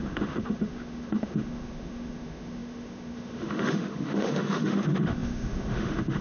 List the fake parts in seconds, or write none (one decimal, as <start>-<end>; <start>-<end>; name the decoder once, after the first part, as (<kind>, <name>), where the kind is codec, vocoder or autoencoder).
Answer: 0.0-6.2 (autoencoder, DAC-VAE)